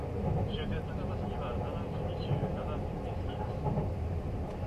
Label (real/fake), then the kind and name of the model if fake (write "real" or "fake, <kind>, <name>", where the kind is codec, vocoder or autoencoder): real